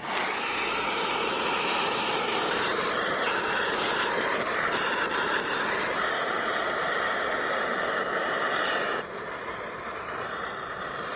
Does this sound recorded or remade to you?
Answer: remade